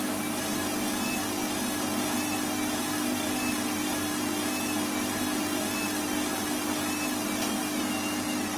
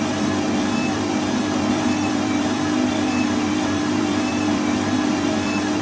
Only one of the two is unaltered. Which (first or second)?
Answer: first